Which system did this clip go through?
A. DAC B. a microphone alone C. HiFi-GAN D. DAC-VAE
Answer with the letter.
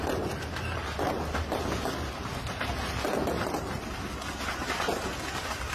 B